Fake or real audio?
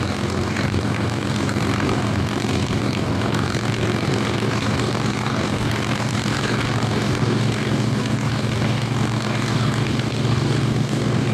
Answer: fake